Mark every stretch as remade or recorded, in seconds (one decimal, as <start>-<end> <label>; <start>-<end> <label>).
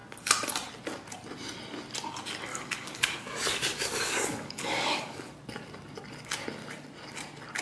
0.0-2.5 recorded; 2.5-5.3 remade; 5.3-7.6 recorded